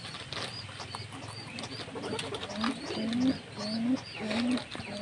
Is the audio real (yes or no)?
yes